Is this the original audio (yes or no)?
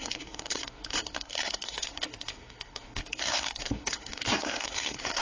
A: no